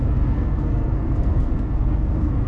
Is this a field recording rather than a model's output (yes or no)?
no